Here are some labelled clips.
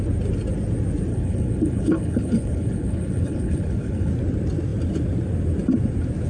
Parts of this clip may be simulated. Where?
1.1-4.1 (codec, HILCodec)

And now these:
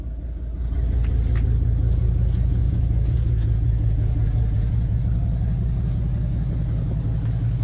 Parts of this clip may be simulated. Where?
2.6-5.0 (vocoder, Vocos)